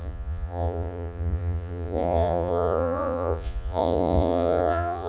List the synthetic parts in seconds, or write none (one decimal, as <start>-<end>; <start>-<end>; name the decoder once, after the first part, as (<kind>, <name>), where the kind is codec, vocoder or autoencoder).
0.0-5.1 (vocoder, Vocos)